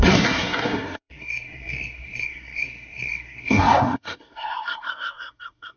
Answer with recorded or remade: remade